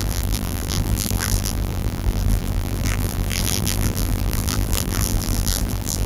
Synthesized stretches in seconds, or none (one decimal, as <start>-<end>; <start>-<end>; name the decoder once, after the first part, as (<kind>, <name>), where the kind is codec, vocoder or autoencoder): 0.0-6.1 (vocoder, BigVGAN v2)